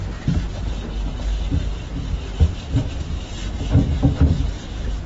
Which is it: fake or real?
real